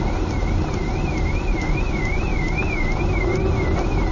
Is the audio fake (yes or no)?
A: no